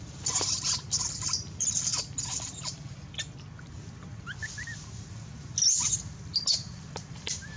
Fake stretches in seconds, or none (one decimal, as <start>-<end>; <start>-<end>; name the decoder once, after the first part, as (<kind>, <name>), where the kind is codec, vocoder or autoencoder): none